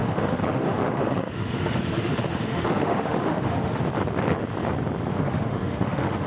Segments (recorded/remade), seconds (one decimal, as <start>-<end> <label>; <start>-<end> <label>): 0.0-3.8 remade; 3.8-5.1 recorded; 5.1-6.3 remade